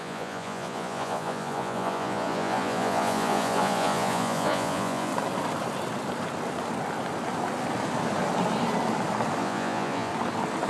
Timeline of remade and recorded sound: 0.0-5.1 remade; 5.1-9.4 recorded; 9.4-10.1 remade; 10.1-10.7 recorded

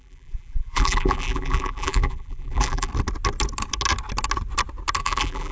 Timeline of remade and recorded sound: 0.0-2.9 remade; 2.9-5.0 recorded; 5.0-5.5 remade

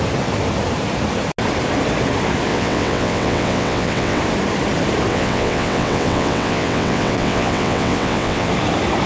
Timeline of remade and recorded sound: 0.0-2.5 recorded; 2.5-4.2 remade; 4.2-5.1 recorded; 5.1-8.5 remade; 8.5-9.1 recorded

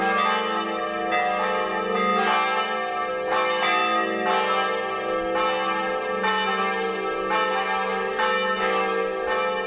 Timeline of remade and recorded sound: 0.0-9.7 recorded

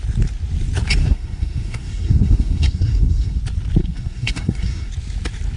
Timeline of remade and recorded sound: 0.0-1.0 recorded; 1.0-3.4 remade; 3.4-3.8 recorded; 3.8-4.9 remade; 4.9-5.6 recorded

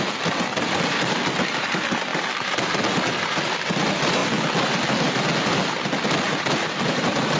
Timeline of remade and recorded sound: 0.0-4.2 remade; 4.2-6.4 recorded; 6.4-7.4 remade

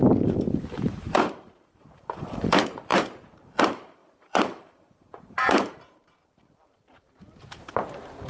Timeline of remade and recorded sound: 0.0-8.3 remade